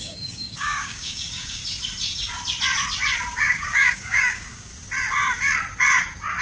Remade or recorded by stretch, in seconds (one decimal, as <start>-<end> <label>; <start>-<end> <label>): 0.0-1.6 remade; 1.6-3.4 recorded; 3.4-4.7 remade; 4.7-6.4 recorded